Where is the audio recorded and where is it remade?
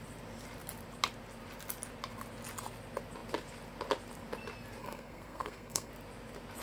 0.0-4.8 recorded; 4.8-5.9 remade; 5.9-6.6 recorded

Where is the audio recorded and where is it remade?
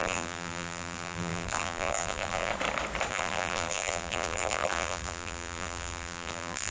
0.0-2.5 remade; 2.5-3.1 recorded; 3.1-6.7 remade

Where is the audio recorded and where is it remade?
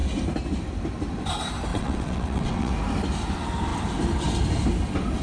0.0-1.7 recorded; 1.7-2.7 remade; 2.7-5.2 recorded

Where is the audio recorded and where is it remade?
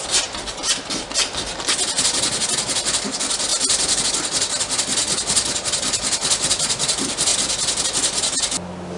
0.0-9.0 recorded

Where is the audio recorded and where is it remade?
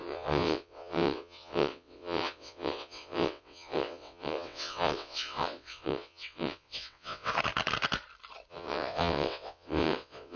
0.0-7.3 remade; 7.3-8.5 recorded; 8.5-10.4 remade